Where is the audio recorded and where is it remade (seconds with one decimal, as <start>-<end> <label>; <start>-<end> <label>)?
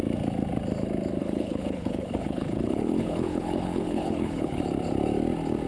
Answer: 0.0-1.2 recorded; 1.2-4.6 remade; 4.6-5.7 recorded